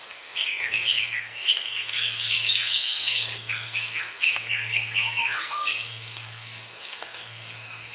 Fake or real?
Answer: fake